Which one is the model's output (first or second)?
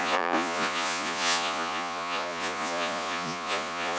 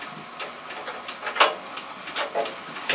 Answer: first